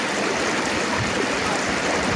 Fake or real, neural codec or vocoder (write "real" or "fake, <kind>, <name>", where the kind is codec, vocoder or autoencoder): real